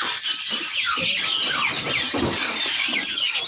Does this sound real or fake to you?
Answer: real